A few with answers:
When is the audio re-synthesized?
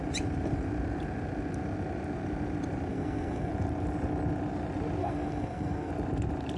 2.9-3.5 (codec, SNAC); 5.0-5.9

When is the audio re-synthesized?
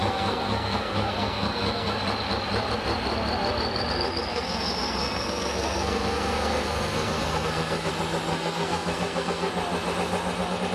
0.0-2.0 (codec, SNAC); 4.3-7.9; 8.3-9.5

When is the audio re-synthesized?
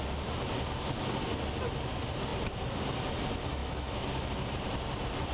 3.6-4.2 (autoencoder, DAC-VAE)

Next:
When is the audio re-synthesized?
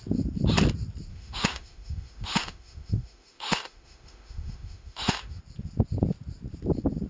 1.1-5.4 (autoencoder, DAC-VAE)